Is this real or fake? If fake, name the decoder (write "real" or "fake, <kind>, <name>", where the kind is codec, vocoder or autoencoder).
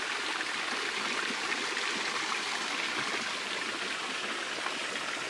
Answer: real